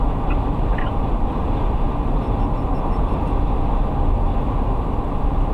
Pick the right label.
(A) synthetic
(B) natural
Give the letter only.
B